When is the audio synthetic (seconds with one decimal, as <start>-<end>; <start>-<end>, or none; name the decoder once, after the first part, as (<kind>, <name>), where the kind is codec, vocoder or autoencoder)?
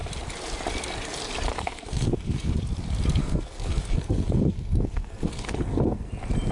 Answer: 1.5-2.5 (codec, SNAC); 3.2-6.1